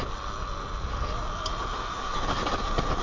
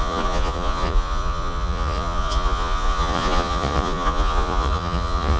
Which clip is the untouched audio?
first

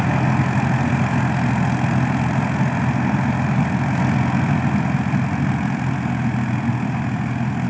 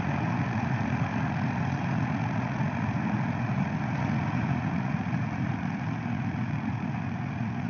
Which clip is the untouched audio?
first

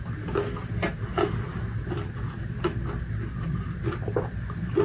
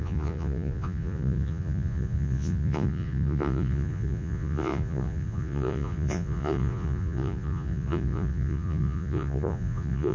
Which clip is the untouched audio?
first